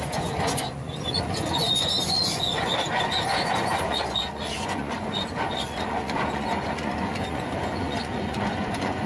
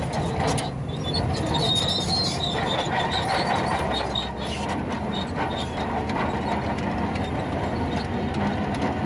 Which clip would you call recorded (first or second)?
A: second